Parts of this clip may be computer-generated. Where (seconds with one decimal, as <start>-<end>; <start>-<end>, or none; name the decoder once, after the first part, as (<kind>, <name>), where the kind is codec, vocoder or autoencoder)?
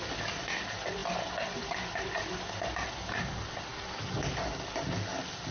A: none